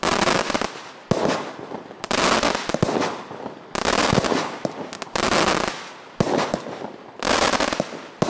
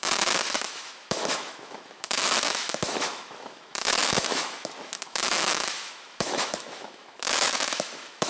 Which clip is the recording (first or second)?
first